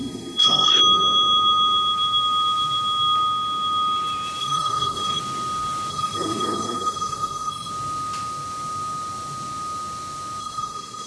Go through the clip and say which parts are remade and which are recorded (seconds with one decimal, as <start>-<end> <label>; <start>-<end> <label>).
0.0-0.8 remade; 0.8-4.4 recorded; 4.4-5.2 remade; 5.2-5.9 recorded; 5.9-7.7 remade; 7.7-10.4 recorded; 10.4-11.1 remade